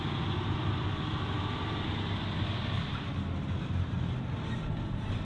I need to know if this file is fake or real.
real